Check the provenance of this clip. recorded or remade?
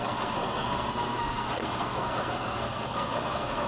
remade